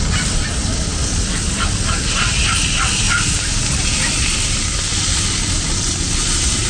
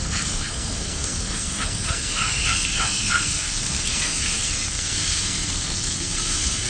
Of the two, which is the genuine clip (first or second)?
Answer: first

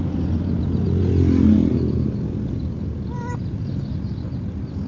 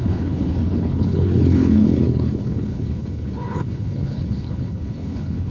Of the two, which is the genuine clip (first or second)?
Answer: first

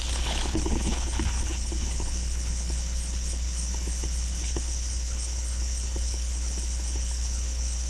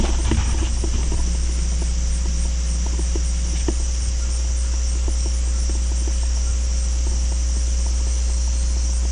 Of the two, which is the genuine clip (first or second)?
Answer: second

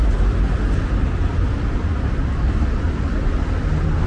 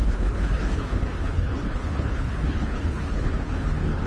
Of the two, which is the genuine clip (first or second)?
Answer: first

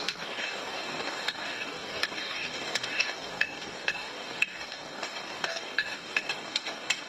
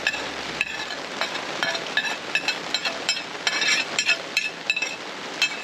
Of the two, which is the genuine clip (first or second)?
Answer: second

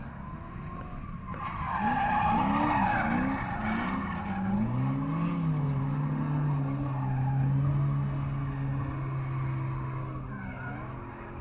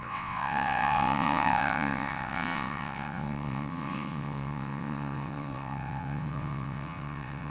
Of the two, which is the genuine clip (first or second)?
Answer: first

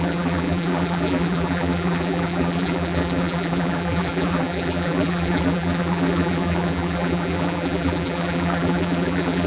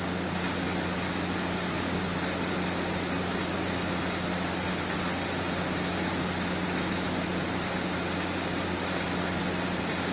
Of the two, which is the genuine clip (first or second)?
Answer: second